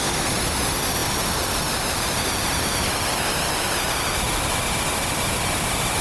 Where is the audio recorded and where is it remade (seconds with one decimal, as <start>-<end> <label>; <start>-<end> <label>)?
0.0-1.0 recorded; 1.0-4.6 remade; 4.6-6.0 recorded

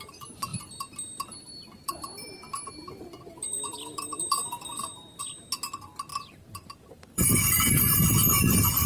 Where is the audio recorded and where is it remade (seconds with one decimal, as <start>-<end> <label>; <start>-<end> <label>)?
0.0-0.5 recorded; 0.5-5.2 remade; 5.2-6.1 recorded; 6.1-7.9 remade; 7.9-8.9 recorded

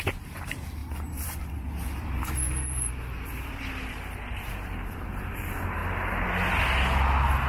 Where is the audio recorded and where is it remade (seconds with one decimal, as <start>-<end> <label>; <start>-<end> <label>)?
0.0-5.8 remade; 5.8-7.5 recorded

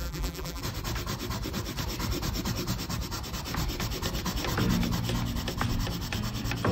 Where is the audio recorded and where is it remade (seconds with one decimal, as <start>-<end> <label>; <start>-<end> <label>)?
0.0-0.6 remade; 0.6-6.7 recorded

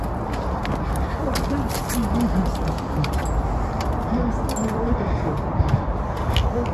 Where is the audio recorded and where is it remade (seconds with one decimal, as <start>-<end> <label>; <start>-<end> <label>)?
0.0-4.6 recorded; 4.6-5.3 remade; 5.3-6.7 recorded

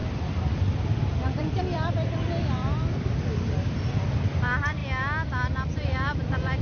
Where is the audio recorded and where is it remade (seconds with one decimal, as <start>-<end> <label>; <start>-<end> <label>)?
0.0-4.8 remade; 4.8-5.7 recorded; 5.7-6.6 remade